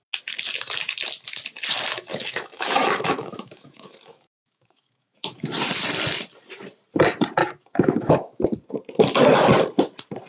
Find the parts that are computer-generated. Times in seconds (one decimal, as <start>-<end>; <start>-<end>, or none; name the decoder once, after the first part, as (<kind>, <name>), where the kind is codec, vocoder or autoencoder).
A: 2.1-5.5 (autoencoder, DAC-VAE); 7.4-8.4